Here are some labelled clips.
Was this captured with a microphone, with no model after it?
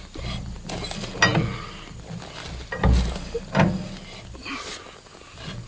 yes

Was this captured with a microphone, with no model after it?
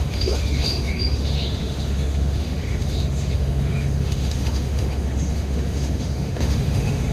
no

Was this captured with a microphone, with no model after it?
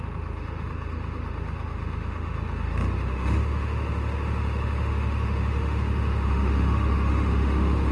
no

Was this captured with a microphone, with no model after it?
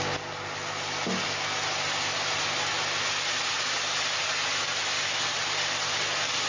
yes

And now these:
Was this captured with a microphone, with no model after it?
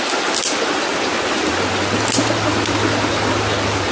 yes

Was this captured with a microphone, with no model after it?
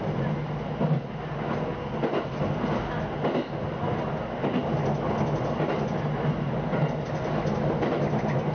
yes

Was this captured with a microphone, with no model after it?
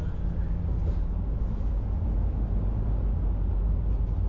yes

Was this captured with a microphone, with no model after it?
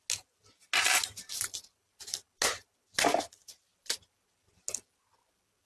yes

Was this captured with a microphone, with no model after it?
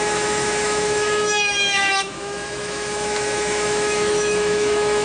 no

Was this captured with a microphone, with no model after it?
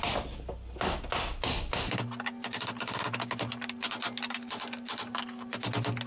yes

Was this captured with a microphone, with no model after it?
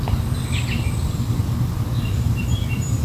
yes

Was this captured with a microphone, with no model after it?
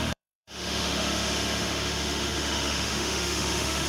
no